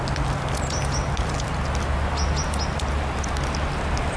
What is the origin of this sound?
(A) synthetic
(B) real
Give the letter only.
B